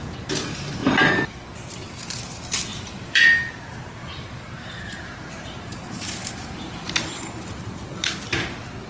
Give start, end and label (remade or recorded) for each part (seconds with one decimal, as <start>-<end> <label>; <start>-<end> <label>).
0.0-2.7 recorded; 2.7-3.2 remade; 3.2-4.0 recorded; 4.0-6.9 remade; 6.9-8.9 recorded